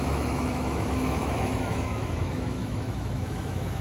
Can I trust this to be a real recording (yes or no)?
no